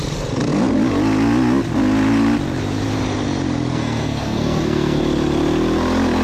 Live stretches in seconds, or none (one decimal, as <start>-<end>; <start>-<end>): 0.0-3.7; 5.0-6.2